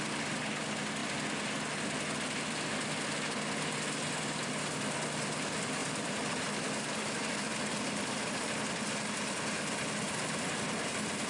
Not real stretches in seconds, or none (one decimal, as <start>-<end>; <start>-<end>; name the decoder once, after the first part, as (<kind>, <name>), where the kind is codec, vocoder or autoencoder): 5.8-6.4 (vocoder, BigVGAN v2); 7.5-8.6